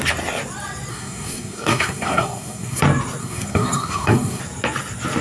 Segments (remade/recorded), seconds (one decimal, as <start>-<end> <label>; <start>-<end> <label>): 0.0-0.9 recorded; 0.9-2.8 remade; 2.8-3.2 recorded; 3.2-4.4 remade; 4.4-5.2 recorded